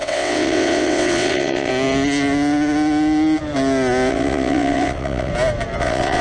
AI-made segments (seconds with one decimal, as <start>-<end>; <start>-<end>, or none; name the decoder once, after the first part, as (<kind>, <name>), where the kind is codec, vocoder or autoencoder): 0.0-1.7 (vocoder, WaveNeXt); 4.1-5.3; 5.8-6.2